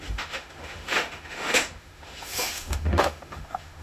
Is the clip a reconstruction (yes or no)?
yes